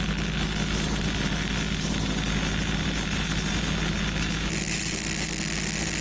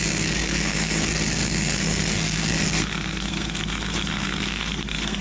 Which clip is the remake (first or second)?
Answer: second